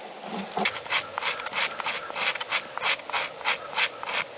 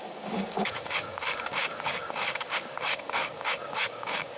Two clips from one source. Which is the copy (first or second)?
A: second